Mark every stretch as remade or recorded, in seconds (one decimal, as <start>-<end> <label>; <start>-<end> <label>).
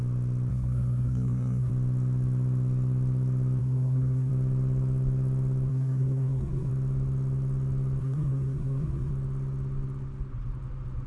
0.0-0.5 recorded; 0.5-1.7 remade; 1.7-3.6 recorded; 3.6-4.3 remade; 4.3-5.7 recorded; 5.7-6.7 remade; 6.7-8.0 recorded; 8.0-9.1 remade; 9.1-11.1 recorded